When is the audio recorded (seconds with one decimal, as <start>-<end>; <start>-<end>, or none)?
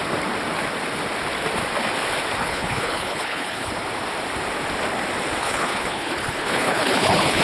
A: 0.0-2.4; 3.7-5.4